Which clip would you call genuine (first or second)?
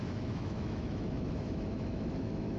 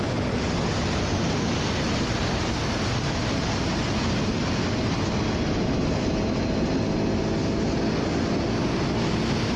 second